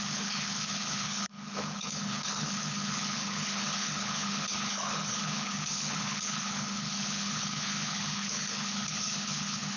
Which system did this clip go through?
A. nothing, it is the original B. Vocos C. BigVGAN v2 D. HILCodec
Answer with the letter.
D